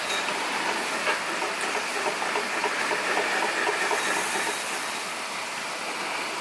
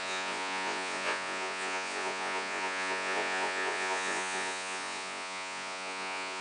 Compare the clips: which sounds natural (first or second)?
first